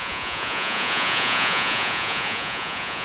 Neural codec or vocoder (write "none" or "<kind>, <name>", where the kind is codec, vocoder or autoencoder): vocoder, Vocos